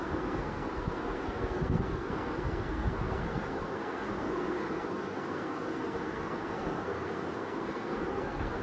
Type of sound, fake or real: fake